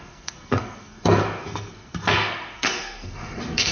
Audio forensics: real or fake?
fake